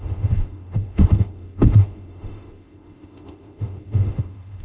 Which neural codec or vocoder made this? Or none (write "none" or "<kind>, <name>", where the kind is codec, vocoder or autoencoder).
autoencoder, DAC-VAE